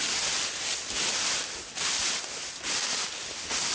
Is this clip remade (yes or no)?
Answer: no